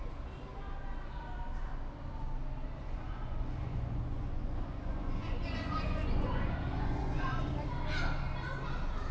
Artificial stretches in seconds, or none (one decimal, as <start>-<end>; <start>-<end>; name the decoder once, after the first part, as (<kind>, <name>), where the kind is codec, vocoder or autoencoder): 2.8-7.4 (vocoder, Vocos)